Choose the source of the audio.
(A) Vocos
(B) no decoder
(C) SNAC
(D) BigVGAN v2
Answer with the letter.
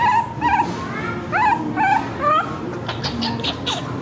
B